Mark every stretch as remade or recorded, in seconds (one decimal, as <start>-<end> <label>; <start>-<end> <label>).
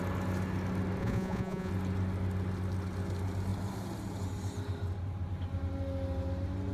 0.0-1.0 recorded; 1.0-1.7 remade; 1.7-6.7 recorded